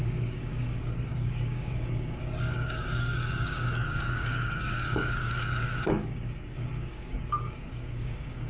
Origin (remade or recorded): remade